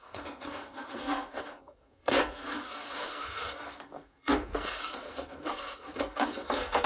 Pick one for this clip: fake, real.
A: fake